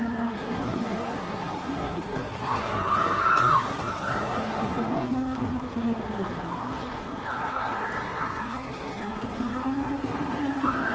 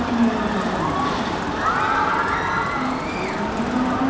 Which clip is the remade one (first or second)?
first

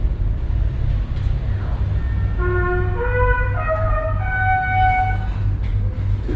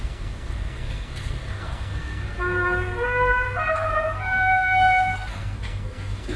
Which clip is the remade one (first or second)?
second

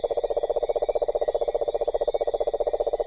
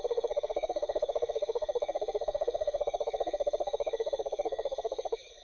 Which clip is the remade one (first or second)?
second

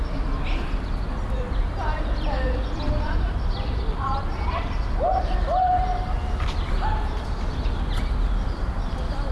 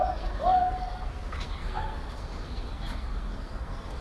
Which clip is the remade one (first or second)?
second